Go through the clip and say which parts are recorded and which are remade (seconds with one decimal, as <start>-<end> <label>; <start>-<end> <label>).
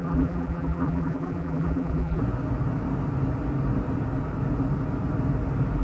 0.0-2.2 remade; 2.2-5.8 recorded